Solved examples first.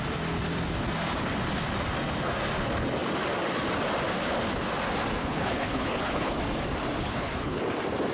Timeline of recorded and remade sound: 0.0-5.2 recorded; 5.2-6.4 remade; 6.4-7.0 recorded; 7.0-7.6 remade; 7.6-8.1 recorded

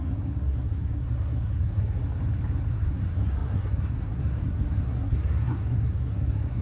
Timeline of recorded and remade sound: 0.0-2.0 remade; 2.0-2.7 recorded; 2.7-6.6 remade

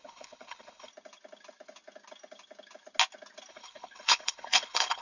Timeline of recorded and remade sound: 0.0-0.9 remade; 0.9-3.5 recorded; 3.5-5.0 remade

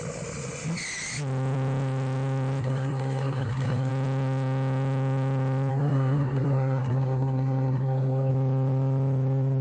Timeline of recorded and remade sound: 0.0-2.6 recorded; 2.6-3.9 remade; 3.9-5.7 recorded; 5.7-8.3 remade; 8.3-9.6 recorded

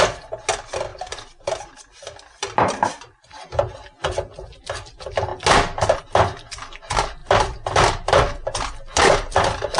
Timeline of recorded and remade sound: 0.0-0.9 recorded; 0.9-3.6 remade; 3.6-7.2 recorded; 7.2-9.8 remade

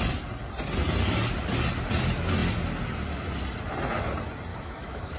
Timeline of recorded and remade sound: 0.0-4.5 recorded; 4.5-5.2 remade

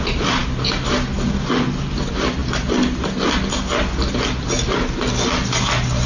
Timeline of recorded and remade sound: 0.0-6.1 recorded

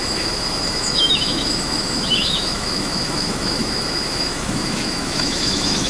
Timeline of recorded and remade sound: 0.0-5.9 remade